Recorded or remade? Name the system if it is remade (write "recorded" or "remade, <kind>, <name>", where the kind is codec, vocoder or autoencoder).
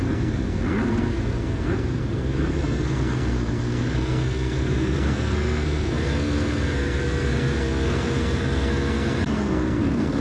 remade, codec, SNAC